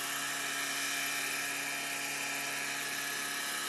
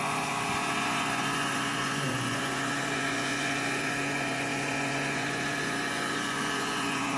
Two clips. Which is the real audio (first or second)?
first